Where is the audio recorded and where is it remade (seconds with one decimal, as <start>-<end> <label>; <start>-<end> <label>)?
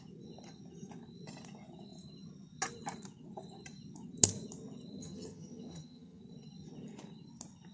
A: 0.0-5.0 recorded; 5.0-6.2 remade; 6.2-7.7 recorded